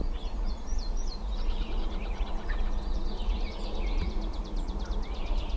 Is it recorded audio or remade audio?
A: remade